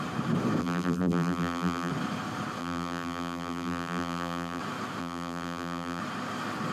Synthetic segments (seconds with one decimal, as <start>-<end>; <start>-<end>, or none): 0.6-1.9; 2.6-4.6; 5.0-6.0